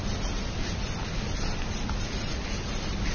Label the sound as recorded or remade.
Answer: recorded